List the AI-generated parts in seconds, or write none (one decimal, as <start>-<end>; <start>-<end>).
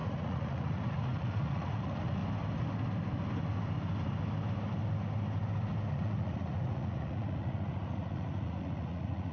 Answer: 0.0-2.2; 5.9-9.3